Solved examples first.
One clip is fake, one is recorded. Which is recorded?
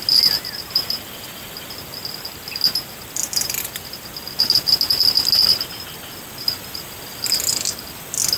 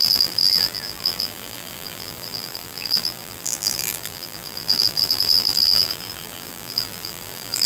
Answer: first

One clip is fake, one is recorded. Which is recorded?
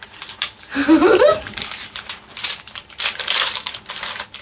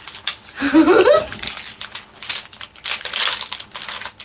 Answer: second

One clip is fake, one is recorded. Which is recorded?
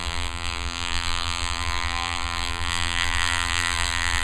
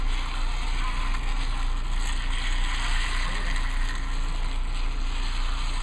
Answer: second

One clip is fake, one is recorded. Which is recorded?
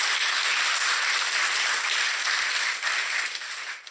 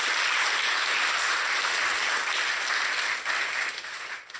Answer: second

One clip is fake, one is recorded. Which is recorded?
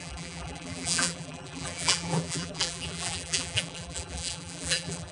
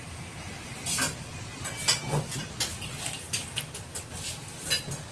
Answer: second